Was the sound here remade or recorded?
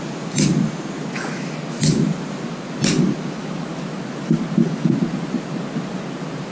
recorded